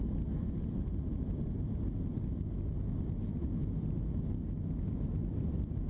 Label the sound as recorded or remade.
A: recorded